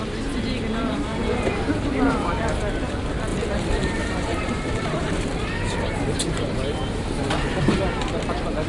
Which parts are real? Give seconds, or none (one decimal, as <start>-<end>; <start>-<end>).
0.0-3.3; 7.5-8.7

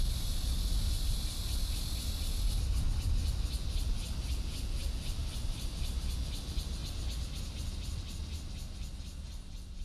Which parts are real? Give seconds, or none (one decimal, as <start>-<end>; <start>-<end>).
0.0-5.2; 6.1-9.8

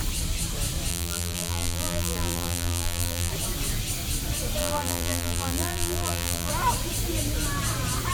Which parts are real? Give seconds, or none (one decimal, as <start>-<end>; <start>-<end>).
0.0-0.9; 3.3-4.6; 6.5-8.1